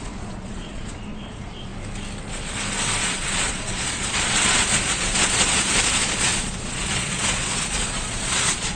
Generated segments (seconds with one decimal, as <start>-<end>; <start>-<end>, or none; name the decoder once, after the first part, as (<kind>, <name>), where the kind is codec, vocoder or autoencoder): 0.0-1.7 (vocoder, Vocos); 3.0-8.8